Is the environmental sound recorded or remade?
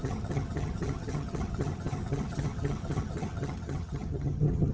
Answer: remade